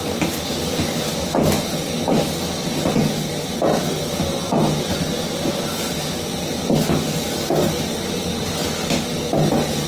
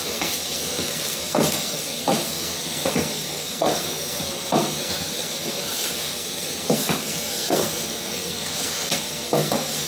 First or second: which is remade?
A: second